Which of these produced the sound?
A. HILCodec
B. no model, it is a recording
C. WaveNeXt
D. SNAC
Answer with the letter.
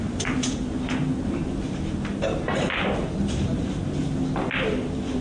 B